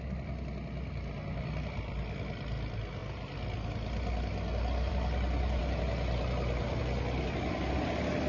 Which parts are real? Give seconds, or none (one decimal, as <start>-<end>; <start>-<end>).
0.0-8.3